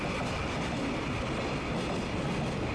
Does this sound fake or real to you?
real